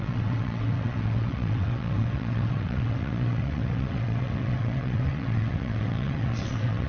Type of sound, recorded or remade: remade